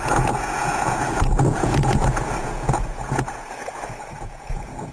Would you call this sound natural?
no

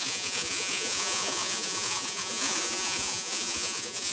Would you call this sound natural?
no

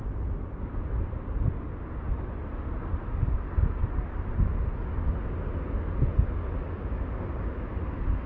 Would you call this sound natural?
yes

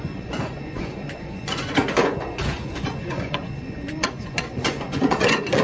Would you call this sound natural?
no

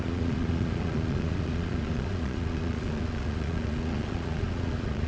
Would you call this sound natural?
no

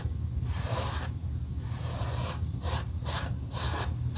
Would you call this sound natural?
yes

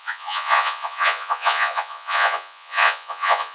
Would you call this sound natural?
no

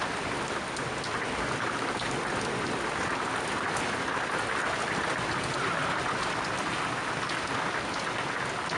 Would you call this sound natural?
yes